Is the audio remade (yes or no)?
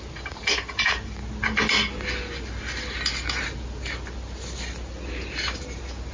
no